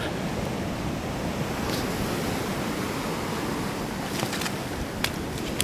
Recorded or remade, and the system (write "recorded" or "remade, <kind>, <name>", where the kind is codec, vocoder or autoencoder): recorded